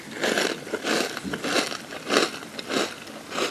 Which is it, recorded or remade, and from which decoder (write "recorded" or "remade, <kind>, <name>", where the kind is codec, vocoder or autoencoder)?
recorded